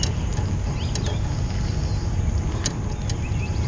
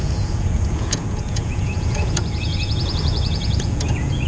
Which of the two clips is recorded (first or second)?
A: first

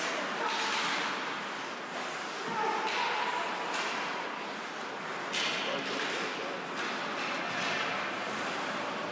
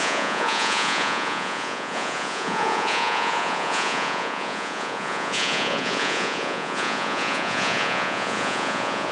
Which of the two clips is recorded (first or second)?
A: first